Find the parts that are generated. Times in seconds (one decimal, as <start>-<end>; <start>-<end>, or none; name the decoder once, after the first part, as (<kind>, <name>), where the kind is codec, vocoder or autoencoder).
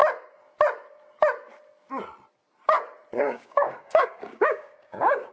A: 3.2-5.3 (codec, DAC)